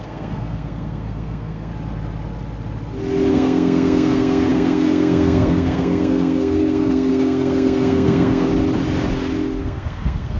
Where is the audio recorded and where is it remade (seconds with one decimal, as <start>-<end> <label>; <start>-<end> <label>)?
0.0-1.7 remade; 1.7-3.3 recorded; 3.3-8.5 remade; 8.5-9.6 recorded; 9.6-10.4 remade